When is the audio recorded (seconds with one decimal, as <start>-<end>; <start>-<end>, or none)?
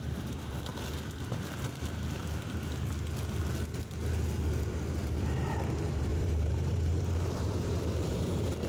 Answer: 0.7-1.2; 2.2-5.0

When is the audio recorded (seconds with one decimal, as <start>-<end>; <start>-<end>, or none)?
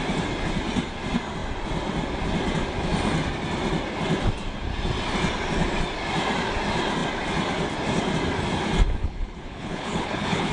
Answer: 0.0-9.0